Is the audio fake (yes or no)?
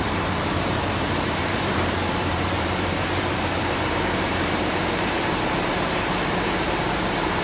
yes